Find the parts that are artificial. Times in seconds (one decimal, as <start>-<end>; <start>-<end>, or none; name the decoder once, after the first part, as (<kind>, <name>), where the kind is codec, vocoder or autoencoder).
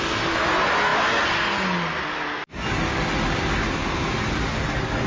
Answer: none